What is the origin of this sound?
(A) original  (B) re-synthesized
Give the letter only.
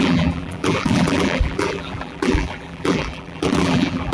B